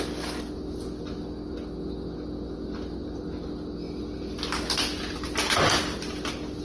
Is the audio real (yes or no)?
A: yes